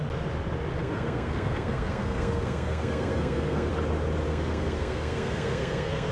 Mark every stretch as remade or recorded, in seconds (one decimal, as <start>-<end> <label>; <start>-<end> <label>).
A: 0.0-0.8 recorded; 0.8-3.7 remade; 3.7-4.3 recorded; 4.3-6.1 remade